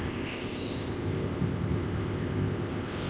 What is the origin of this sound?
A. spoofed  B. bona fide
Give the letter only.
A